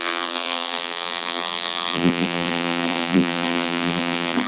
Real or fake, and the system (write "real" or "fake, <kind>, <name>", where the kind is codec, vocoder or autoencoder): fake, vocoder, BigVGAN v2